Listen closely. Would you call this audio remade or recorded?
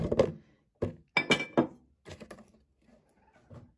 recorded